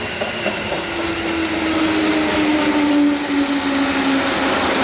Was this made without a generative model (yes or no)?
yes